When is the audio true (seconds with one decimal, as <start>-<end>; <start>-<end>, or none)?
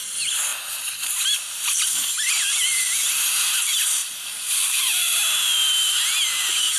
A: 0.0-0.5; 1.8-4.0; 5.1-6.8